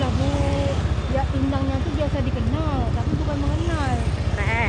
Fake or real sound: real